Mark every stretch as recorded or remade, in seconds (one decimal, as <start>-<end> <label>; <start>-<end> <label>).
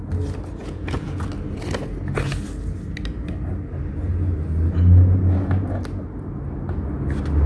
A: 0.0-0.6 recorded; 0.6-1.2 remade; 1.2-7.5 recorded